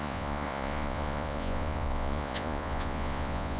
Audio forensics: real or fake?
fake